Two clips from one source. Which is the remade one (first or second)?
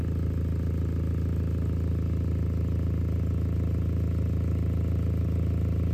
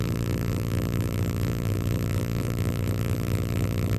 second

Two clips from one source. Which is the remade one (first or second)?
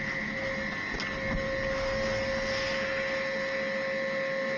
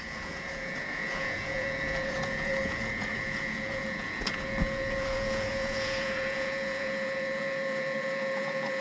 second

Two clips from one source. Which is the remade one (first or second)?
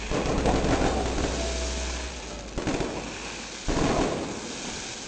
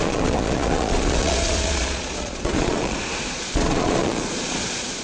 second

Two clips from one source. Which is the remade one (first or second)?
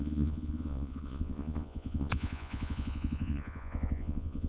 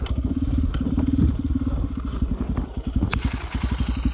first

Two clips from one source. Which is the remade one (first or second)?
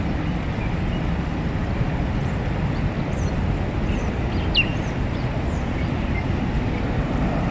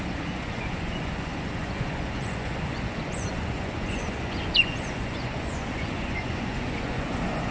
second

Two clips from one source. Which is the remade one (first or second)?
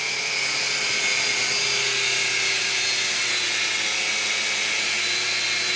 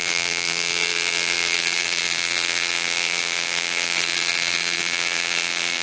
second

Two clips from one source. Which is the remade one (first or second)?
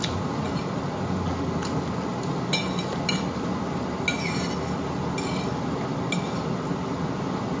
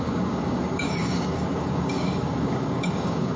second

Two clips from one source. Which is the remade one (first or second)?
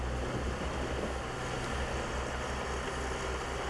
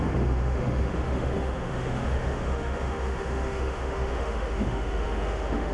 second